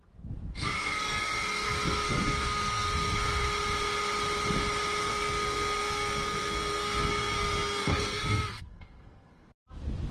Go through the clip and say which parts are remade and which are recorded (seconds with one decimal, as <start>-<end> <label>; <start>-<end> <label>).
0.0-0.5 recorded; 0.5-3.4 remade; 3.4-5.0 recorded; 5.0-9.5 remade; 9.5-10.1 recorded